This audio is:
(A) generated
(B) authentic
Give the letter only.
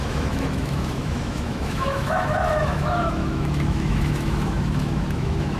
A